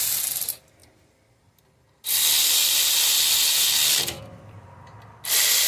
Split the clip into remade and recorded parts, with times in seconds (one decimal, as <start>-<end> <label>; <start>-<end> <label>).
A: 0.0-5.7 recorded